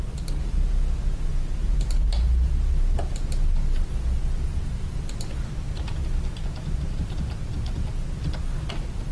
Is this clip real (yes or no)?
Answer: yes